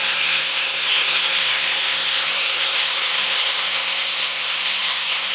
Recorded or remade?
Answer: remade